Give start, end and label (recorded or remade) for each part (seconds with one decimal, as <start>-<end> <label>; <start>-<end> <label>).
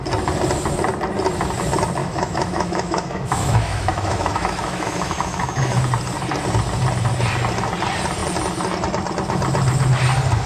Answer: 0.0-2.0 recorded; 2.0-5.8 remade; 5.8-10.5 recorded